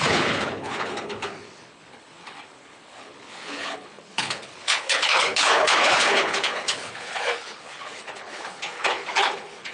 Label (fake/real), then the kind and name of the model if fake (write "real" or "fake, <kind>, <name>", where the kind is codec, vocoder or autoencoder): fake, codec, HILCodec